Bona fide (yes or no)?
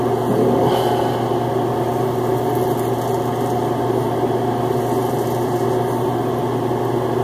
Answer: yes